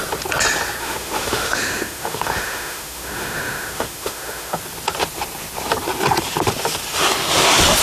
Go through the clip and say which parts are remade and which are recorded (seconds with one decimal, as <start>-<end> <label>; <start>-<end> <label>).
0.0-0.8 recorded; 0.8-4.6 remade; 4.6-7.8 recorded